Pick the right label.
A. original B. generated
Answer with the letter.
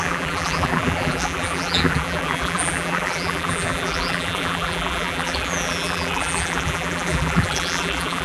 B